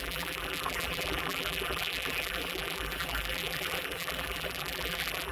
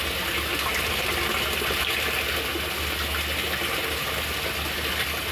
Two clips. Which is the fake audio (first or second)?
first